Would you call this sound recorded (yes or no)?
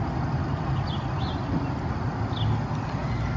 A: yes